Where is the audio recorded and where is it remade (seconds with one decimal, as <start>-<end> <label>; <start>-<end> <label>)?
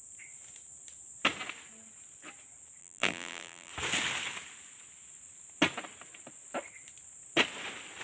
0.0-2.8 recorded; 2.8-3.7 remade; 3.7-8.0 recorded